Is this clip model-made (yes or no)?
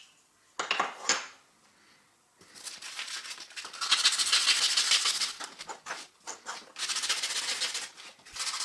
no